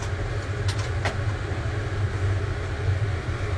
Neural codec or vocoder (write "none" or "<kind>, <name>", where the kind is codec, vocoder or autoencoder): none